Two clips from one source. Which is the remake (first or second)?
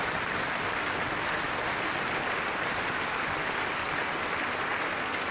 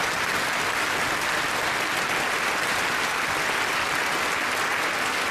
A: first